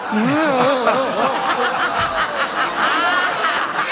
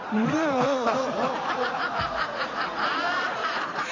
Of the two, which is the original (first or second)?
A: first